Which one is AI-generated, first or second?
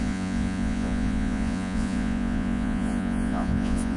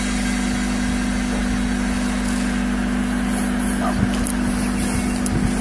first